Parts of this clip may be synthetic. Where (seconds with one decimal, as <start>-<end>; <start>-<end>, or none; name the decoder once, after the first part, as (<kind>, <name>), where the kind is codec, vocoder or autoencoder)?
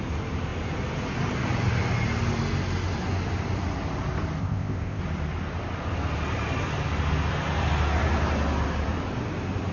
4.4-5.0 (codec, ZipCodec)